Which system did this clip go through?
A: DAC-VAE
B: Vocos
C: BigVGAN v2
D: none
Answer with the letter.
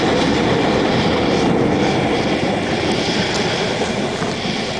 D